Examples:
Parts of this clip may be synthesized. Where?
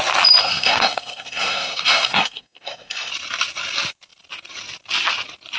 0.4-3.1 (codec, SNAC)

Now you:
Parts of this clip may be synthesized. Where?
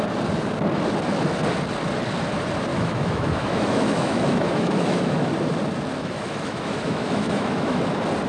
2.7-5.3 (autoencoder, DAC-VAE); 6.0-7.8